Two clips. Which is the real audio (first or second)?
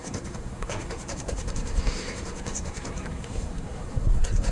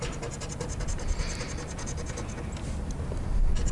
second